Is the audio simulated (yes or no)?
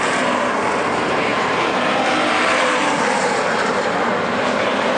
yes